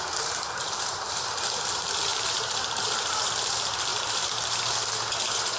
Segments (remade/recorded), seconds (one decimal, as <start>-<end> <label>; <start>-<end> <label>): 0.0-2.1 recorded; 2.1-3.3 remade; 3.3-3.9 recorded; 3.9-4.7 remade; 4.7-5.6 recorded